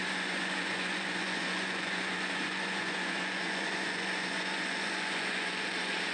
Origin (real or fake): fake